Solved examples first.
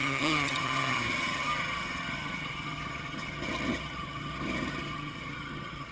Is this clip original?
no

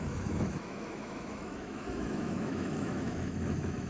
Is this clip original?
no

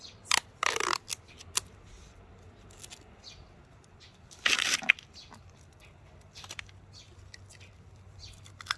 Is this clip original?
yes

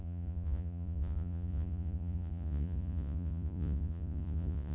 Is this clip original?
no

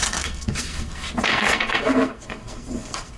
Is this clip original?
no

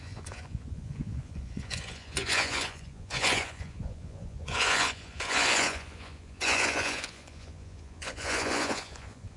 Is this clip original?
no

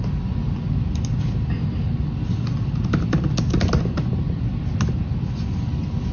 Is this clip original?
yes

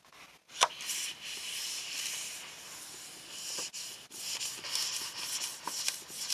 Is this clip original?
yes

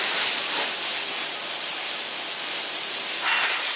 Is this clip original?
no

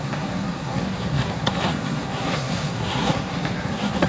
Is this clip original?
no